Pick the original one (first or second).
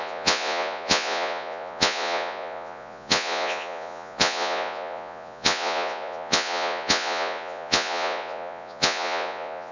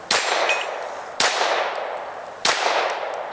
second